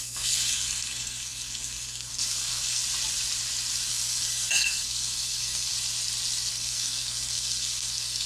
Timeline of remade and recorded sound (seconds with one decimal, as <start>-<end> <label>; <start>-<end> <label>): 0.0-2.8 remade; 2.8-3.9 recorded; 3.9-5.7 remade; 5.7-6.5 recorded; 6.5-8.3 remade